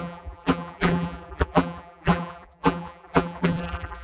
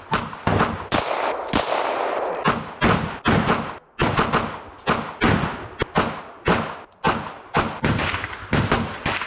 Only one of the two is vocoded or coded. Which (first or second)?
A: first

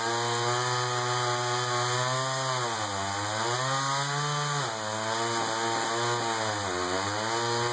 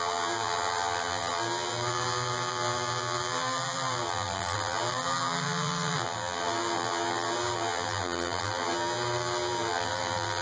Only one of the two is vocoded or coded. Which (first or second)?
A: second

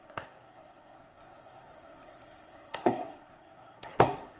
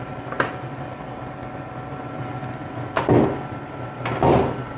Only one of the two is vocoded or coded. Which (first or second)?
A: first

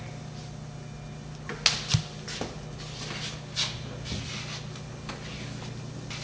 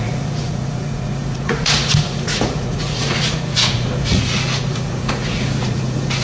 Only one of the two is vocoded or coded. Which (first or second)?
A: second